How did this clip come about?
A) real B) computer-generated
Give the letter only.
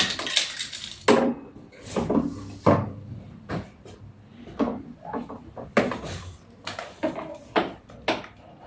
A